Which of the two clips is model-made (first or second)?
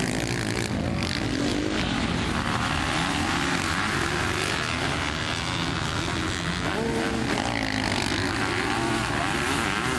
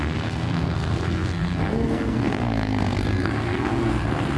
second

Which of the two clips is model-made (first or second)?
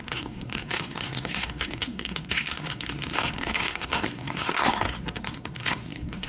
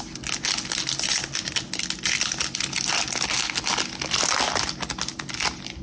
first